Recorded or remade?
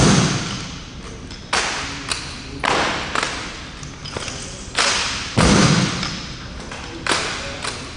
recorded